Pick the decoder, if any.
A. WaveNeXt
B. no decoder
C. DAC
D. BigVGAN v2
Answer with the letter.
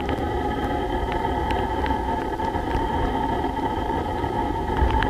D